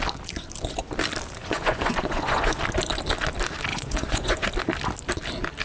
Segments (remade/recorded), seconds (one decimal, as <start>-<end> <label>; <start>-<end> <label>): 0.0-1.4 recorded; 1.4-2.6 remade; 2.6-3.7 recorded; 3.7-4.5 remade; 4.5-5.6 recorded